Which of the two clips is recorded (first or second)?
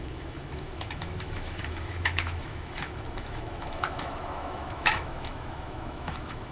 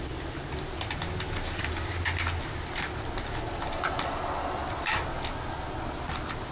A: second